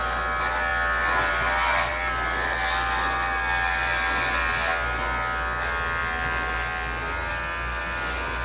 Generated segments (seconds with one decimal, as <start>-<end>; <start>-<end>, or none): none